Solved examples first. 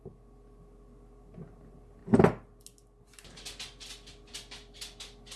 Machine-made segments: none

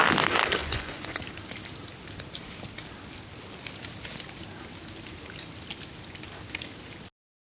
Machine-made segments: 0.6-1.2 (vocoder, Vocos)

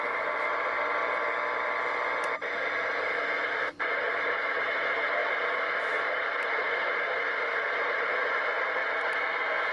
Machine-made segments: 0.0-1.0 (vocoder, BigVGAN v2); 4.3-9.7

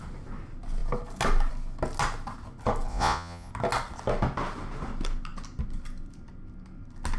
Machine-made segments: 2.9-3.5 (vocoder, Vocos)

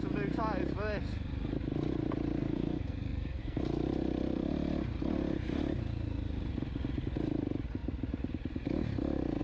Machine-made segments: 2.4-3.6 (codec, SNAC)